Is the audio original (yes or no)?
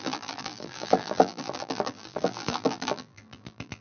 no